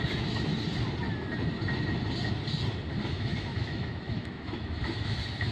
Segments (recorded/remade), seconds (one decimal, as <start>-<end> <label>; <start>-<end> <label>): 0.0-0.5 remade; 0.5-3.1 recorded; 3.1-5.5 remade